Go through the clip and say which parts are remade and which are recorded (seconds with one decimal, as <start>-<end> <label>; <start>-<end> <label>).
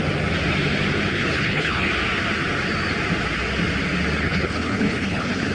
0.0-1.1 recorded; 1.1-1.9 remade; 1.9-4.2 recorded; 4.2-5.5 remade